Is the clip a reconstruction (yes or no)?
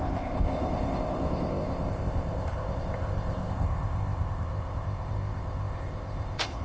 yes